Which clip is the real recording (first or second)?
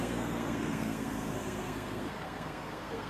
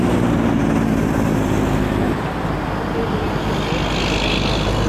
second